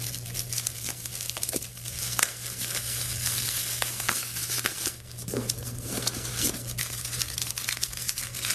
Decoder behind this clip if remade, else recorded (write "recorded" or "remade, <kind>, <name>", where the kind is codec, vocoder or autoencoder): remade, codec, SNAC